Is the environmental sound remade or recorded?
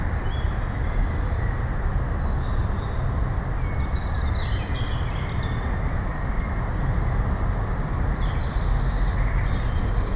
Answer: recorded